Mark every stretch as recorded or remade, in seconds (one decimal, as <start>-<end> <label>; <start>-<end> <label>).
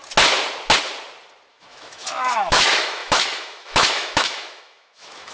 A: 0.0-1.5 recorded; 1.5-5.3 remade